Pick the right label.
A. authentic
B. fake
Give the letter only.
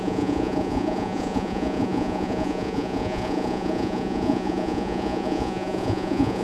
B